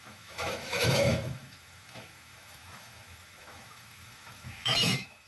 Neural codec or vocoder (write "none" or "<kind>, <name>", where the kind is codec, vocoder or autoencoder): autoencoder, DAC-VAE